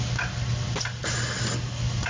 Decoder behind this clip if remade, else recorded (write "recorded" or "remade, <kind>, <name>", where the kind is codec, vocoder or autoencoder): recorded